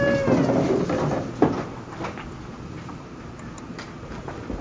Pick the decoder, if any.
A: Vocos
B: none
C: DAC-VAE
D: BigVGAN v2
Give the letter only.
B